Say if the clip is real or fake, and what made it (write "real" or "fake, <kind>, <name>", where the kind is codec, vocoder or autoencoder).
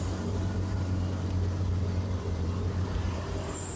fake, vocoder, BigVGAN v2